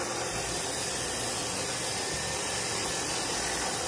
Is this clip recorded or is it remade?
recorded